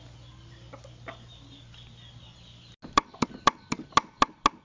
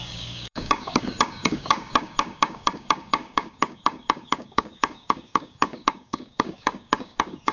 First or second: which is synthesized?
second